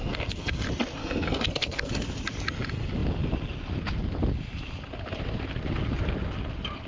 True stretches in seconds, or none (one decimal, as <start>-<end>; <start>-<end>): 0.6-1.0; 1.9-6.9